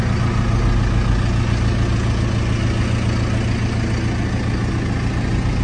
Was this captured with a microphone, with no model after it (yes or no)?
yes